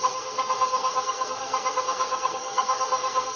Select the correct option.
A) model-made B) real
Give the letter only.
A